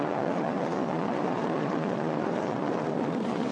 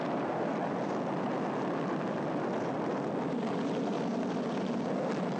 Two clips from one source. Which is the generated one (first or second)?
first